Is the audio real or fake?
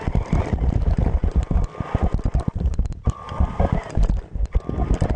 real